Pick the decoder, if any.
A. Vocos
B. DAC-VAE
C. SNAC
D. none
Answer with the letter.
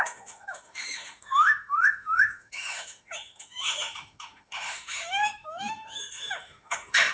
B